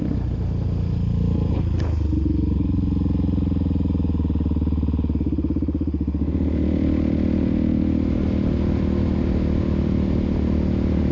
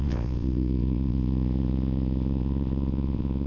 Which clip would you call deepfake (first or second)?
second